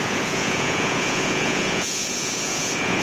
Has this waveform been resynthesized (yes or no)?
yes